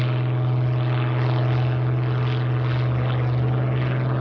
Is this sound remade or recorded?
recorded